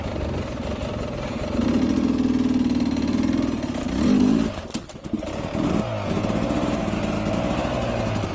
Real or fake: real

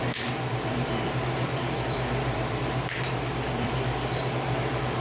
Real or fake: fake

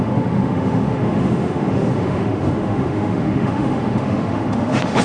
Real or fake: fake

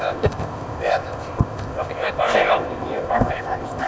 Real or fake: fake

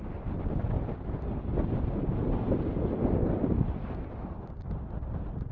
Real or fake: real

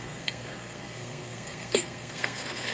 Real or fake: fake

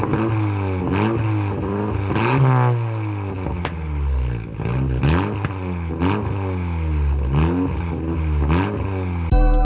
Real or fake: real